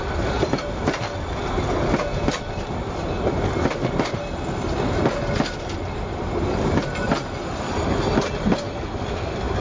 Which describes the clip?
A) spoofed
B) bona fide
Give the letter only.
B